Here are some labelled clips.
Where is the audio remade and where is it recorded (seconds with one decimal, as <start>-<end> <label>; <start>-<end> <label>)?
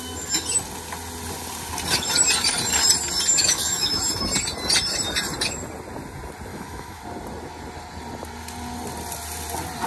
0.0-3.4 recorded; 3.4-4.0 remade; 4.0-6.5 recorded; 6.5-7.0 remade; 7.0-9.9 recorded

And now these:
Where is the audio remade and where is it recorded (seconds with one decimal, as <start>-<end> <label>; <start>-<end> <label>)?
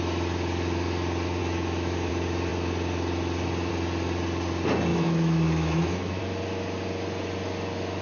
0.0-1.4 recorded; 1.4-2.1 remade; 2.1-4.9 recorded; 4.9-6.2 remade; 6.2-8.0 recorded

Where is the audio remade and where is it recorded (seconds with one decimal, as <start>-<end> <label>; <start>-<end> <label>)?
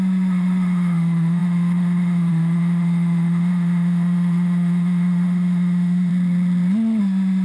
0.0-6.1 remade; 6.1-7.0 recorded; 7.0-7.4 remade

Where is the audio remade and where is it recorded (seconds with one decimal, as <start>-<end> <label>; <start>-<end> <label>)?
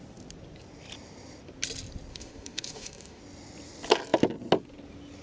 0.0-2.1 recorded; 2.1-3.2 remade; 3.2-5.2 recorded